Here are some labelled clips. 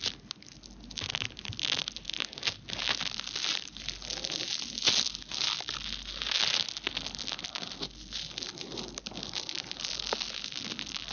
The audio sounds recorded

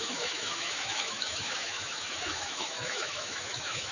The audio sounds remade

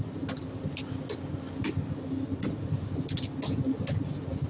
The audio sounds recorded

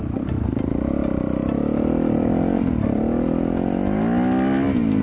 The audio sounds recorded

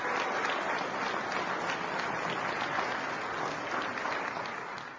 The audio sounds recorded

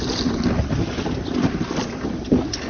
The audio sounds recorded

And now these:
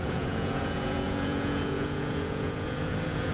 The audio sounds remade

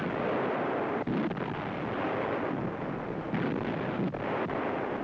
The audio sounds recorded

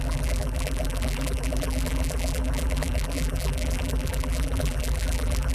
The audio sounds remade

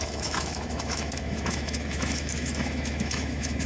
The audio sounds remade